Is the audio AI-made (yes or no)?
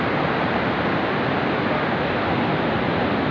no